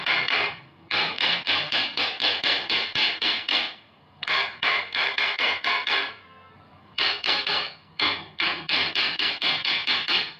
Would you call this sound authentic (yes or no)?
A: no